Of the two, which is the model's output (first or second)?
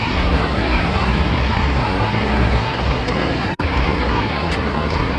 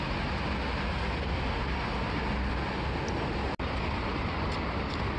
first